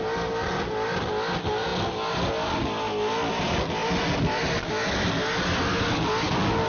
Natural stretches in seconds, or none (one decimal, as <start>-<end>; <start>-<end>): 0.0-6.7